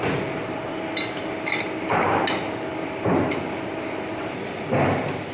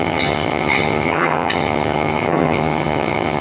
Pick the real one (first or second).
first